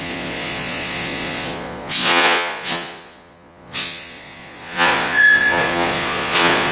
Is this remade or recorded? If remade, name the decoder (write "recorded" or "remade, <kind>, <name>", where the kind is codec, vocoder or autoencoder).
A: remade, vocoder, Vocos